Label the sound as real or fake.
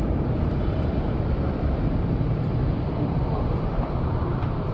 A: fake